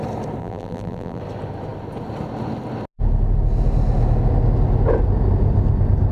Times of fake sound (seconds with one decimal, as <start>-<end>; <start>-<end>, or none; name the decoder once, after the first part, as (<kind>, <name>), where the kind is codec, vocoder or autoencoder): 0.4-1.2 (vocoder, BigVGAN v2)